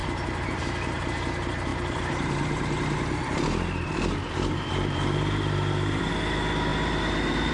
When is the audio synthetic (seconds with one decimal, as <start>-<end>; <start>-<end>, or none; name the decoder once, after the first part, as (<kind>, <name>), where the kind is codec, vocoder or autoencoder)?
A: 0.0-0.6 (vocoder, BigVGAN v2); 1.7-6.1; 6.7-7.5